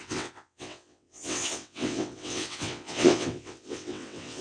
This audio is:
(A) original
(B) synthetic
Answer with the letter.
B